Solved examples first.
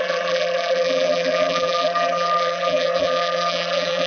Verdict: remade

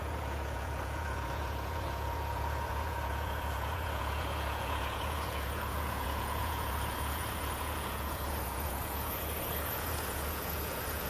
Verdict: remade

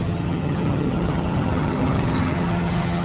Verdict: remade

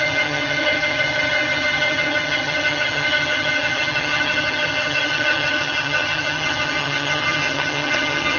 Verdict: remade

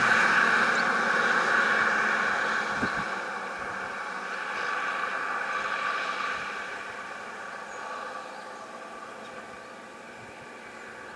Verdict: recorded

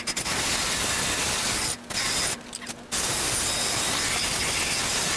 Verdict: recorded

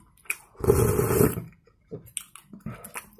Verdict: recorded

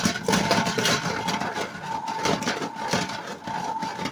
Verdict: recorded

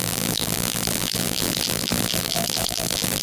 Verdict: remade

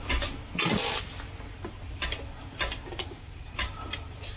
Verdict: recorded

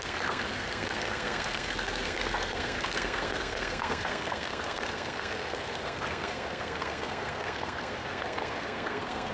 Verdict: remade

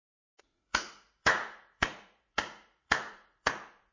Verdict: remade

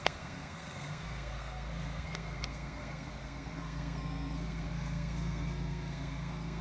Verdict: remade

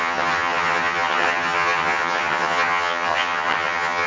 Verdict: remade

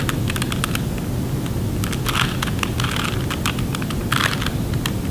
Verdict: recorded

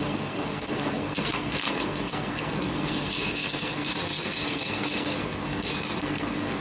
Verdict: remade